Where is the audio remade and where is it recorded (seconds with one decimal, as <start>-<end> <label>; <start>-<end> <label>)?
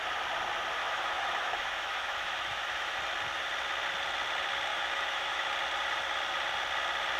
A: 0.0-0.8 recorded; 0.8-3.0 remade; 3.0-4.7 recorded; 4.7-5.5 remade; 5.5-7.2 recorded